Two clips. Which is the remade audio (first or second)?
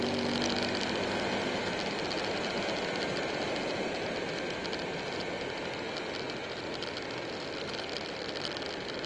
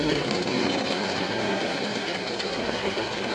second